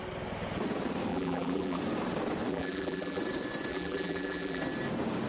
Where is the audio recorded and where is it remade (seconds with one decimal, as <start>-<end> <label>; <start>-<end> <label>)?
0.0-1.1 recorded; 1.1-1.8 remade; 1.8-2.5 recorded; 2.5-3.2 remade; 3.2-3.7 recorded; 3.7-4.6 remade; 4.6-5.3 recorded